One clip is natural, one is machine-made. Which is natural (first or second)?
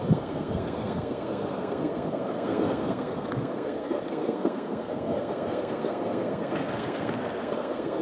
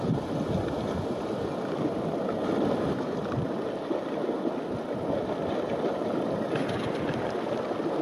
second